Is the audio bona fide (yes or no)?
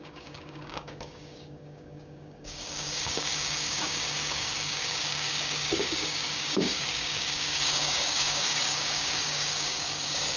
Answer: no